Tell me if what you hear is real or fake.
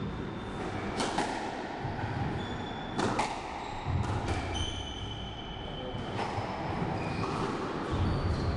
real